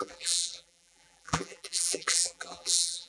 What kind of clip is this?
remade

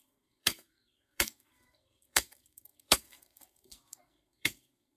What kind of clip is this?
remade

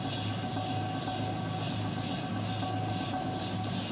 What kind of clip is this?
recorded